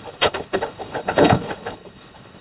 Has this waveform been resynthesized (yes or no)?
yes